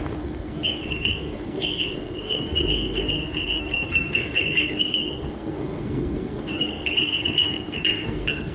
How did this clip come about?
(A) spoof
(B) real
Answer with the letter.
A